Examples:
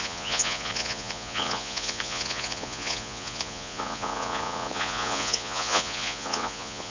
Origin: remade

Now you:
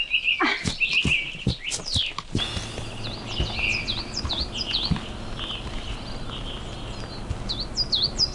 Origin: recorded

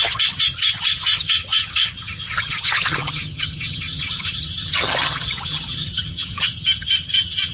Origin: remade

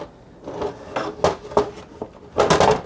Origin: recorded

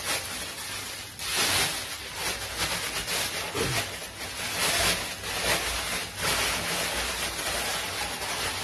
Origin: recorded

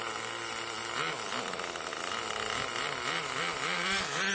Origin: recorded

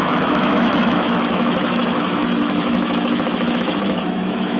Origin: remade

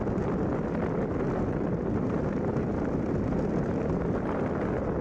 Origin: recorded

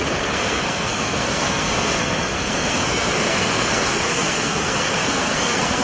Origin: remade